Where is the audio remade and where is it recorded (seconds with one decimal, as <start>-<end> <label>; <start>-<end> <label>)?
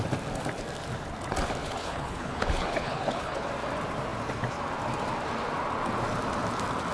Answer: 0.0-1.6 recorded; 1.6-3.5 remade; 3.5-6.9 recorded